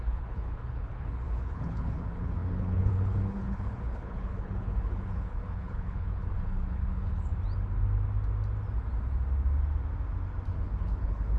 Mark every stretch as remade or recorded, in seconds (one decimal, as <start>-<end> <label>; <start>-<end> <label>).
0.0-7.3 remade; 7.3-10.5 recorded; 10.5-11.4 remade